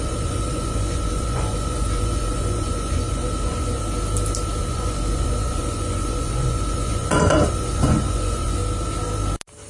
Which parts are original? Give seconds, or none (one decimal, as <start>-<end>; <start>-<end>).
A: 3.8-4.6; 8.6-9.7